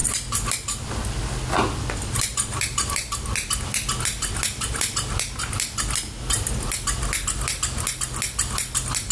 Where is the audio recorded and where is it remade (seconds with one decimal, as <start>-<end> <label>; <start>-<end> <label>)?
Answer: 0.0-9.1 recorded